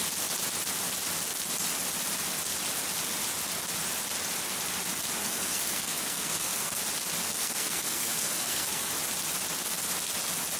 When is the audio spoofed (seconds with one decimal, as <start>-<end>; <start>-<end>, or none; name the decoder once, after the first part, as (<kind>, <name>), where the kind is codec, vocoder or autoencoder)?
5.2-6.8 (codec, SNAC); 7.2-8.9

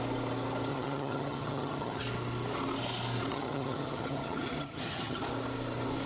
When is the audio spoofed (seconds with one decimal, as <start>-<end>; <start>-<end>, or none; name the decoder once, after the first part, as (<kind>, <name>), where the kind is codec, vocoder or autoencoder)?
0.7-2.0 (vocoder, HiFi-GAN); 3.3-5.2